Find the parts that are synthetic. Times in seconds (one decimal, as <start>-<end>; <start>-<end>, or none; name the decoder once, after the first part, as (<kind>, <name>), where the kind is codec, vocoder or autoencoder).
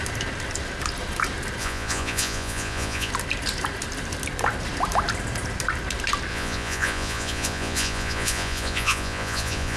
1.6-3.1 (vocoder, Vocos); 6.3-9.8